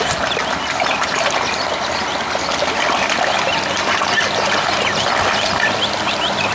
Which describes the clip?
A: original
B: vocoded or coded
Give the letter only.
A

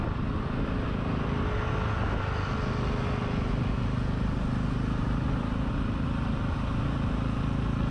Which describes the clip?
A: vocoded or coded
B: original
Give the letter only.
B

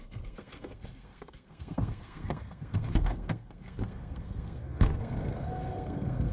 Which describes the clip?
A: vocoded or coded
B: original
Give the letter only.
A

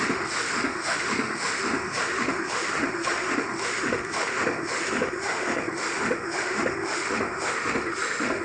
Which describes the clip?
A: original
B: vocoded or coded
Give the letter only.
B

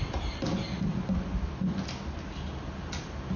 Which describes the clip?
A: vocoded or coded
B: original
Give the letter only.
B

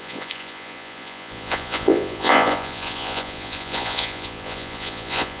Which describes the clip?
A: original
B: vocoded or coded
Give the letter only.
B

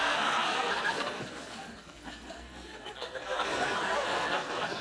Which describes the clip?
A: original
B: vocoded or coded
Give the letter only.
B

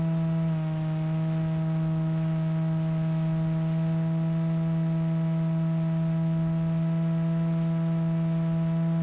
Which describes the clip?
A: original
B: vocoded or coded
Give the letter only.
A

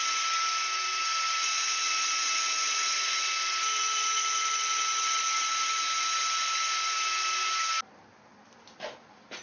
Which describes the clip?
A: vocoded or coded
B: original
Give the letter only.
B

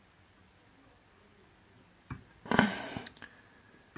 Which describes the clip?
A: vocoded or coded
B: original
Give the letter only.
B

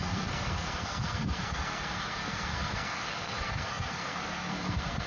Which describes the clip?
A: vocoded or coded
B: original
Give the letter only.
A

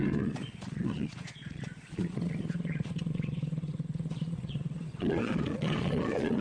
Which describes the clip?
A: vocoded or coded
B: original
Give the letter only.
A